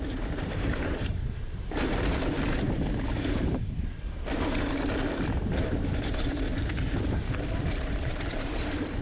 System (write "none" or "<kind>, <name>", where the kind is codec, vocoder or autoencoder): vocoder, BigVGAN v2